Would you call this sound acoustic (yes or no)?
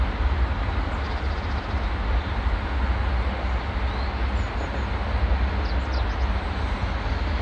yes